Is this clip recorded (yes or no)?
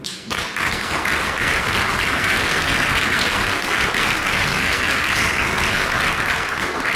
no